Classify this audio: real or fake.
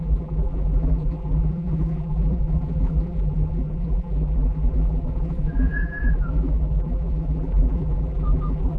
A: fake